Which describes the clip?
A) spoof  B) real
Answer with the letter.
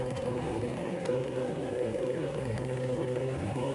A